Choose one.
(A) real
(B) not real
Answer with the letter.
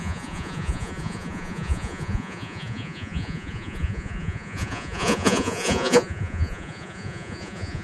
B